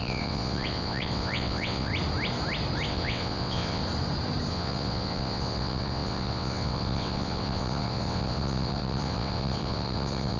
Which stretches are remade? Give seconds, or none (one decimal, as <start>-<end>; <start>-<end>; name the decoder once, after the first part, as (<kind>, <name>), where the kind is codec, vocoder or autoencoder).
0.0-1.9 (vocoder, WaveNeXt); 2.9-3.8; 4.5-10.4